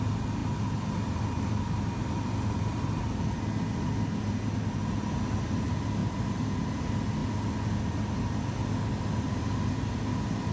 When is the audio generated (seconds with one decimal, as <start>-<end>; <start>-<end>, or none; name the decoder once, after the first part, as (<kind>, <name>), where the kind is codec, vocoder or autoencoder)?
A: 6.0-6.8 (vocoder, BigVGAN v2)